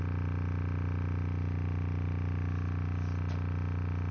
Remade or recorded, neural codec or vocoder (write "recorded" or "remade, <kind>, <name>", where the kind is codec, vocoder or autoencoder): recorded